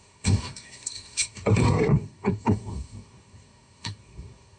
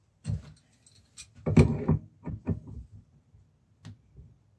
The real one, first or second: second